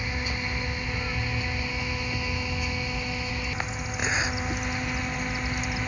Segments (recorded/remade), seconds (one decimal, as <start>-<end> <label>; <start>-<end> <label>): 0.0-1.7 recorded; 1.7-3.3 remade; 3.3-5.9 recorded